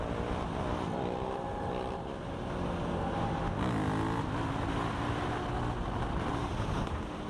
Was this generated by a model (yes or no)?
no